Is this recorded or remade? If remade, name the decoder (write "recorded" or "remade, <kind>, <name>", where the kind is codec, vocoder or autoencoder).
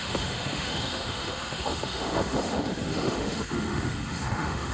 remade, autoencoder, DAC-VAE